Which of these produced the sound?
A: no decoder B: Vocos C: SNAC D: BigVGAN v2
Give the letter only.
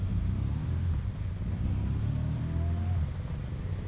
A